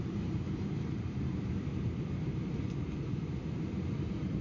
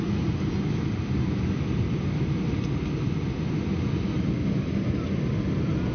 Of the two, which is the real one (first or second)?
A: second